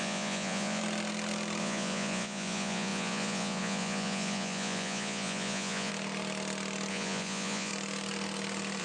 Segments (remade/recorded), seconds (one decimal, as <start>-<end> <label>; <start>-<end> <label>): 0.0-0.8 remade; 0.8-1.6 recorded; 1.6-5.9 remade; 5.9-6.9 recorded; 6.9-7.7 remade; 7.7-8.8 recorded